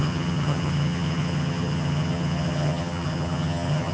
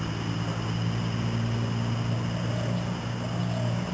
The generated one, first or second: first